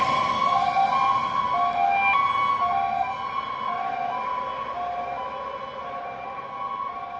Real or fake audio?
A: real